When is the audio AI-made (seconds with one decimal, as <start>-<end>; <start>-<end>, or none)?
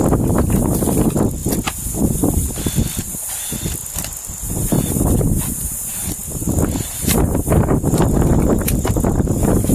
3.8-5.2; 6.2-8.3